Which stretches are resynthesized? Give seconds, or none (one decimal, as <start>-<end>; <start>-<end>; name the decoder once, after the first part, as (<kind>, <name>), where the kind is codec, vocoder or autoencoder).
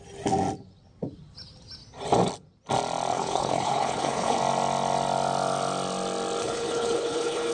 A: 3.1-4.4 (codec, HILCodec); 6.4-7.5